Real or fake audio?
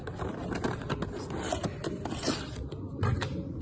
real